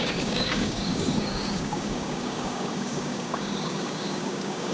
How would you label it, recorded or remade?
remade